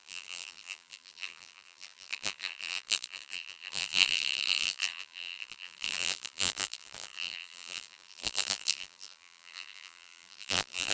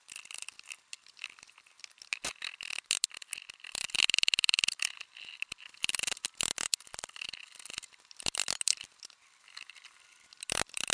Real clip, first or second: second